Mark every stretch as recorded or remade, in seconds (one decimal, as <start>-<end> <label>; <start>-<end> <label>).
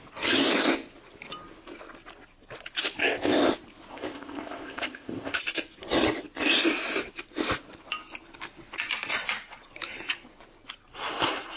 0.0-3.0 recorded; 3.0-3.5 remade; 3.5-3.9 recorded; 3.9-5.4 remade; 5.4-11.6 recorded